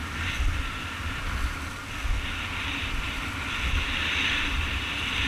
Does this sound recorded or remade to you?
recorded